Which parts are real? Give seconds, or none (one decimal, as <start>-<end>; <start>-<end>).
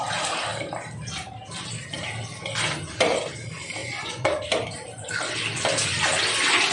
0.0-3.8; 4.4-6.7